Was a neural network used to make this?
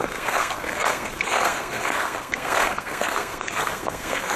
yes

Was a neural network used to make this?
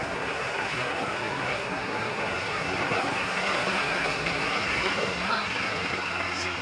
yes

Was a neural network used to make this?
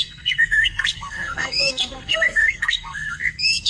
yes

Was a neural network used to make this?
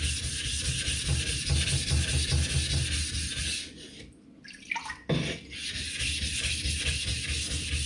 no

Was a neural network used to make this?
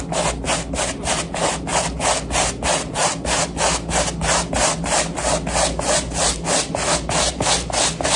no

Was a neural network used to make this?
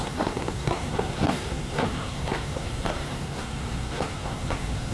yes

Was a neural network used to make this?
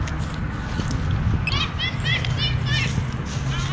no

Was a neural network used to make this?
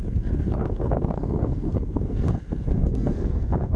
yes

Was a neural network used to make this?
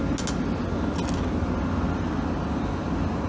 no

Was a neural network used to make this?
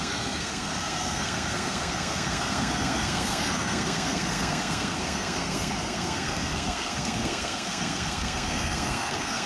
yes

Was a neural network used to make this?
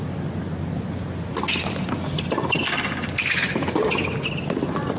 no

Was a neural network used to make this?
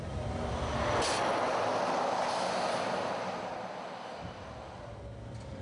no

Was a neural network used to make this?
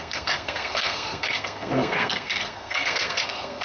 yes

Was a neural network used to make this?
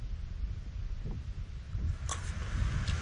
no